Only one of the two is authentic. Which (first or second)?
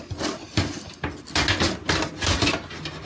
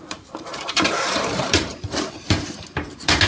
first